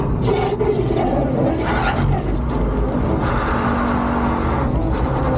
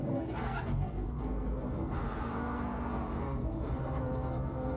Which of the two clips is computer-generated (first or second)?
second